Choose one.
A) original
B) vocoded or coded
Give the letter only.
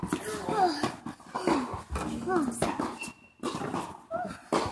A